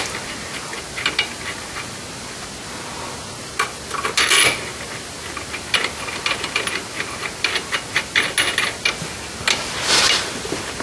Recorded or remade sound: recorded